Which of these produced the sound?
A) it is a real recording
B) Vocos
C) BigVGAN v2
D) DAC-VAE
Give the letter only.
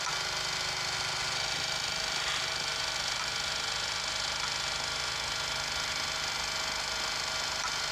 A